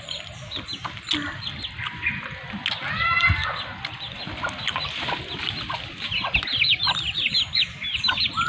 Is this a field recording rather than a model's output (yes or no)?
yes